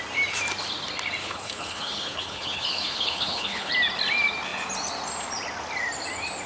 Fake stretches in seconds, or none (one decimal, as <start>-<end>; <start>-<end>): 1.2-3.7